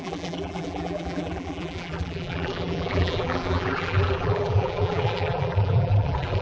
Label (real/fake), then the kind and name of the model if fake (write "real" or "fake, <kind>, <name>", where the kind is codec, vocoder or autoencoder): fake, vocoder, BigVGAN v2